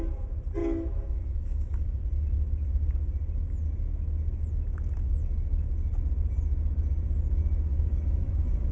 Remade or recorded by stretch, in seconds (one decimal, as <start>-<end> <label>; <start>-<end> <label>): 0.0-0.6 recorded; 0.6-2.0 remade; 2.0-7.7 recorded; 7.7-8.7 remade